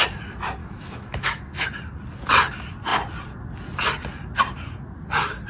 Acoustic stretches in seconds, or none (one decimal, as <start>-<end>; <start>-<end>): 0.0-0.6; 1.4-5.5